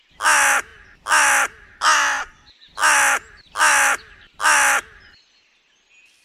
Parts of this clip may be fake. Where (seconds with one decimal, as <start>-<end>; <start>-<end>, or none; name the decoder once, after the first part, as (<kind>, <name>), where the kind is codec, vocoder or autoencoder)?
none